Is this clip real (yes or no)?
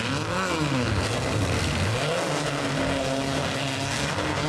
no